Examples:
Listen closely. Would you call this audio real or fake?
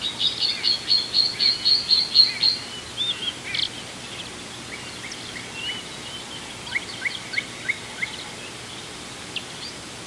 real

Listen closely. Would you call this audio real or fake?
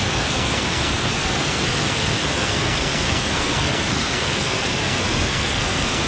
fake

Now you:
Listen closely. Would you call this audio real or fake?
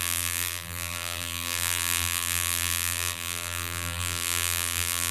fake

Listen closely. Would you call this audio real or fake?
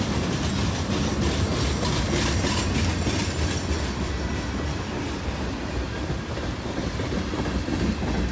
real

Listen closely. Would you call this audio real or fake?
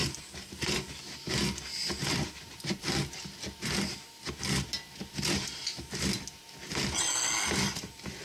real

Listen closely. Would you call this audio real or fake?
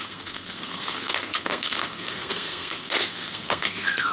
fake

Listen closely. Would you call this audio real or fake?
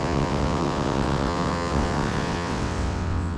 fake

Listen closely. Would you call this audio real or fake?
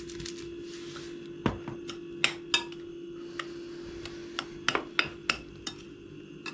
real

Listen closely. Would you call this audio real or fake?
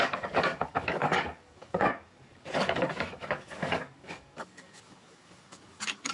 fake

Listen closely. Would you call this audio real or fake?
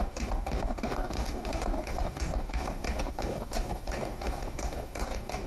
fake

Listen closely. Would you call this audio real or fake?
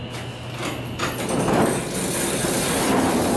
real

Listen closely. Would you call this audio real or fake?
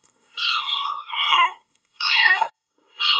fake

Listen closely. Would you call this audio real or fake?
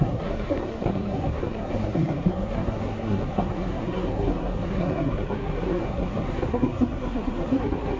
fake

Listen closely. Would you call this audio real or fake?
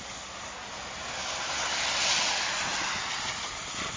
real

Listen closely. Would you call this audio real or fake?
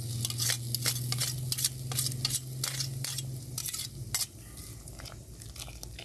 real